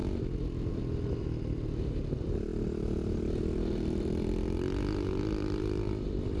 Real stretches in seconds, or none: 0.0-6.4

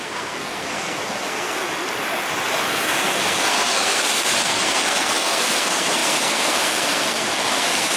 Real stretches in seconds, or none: 1.6-2.6

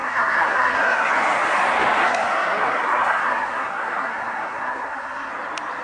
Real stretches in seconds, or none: 1.1-2.0; 5.3-5.8